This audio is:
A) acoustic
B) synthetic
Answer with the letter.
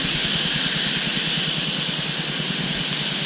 A